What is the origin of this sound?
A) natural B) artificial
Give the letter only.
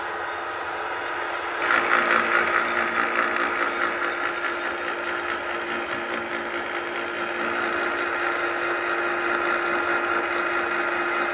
A